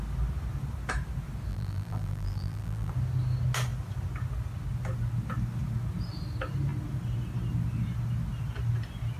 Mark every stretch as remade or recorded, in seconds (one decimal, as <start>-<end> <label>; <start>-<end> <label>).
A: 0.0-1.5 recorded; 1.5-2.9 remade; 2.9-9.2 recorded